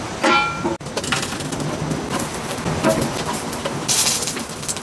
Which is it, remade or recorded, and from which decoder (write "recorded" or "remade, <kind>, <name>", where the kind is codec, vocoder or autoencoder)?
recorded